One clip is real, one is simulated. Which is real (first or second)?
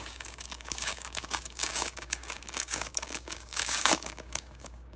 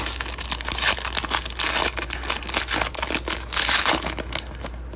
second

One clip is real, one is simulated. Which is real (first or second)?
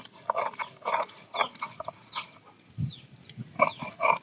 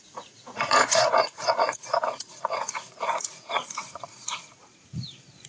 first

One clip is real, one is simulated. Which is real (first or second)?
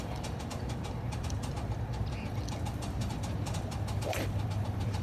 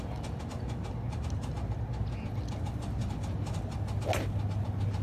second